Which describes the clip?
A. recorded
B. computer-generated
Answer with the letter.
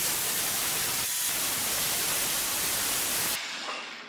A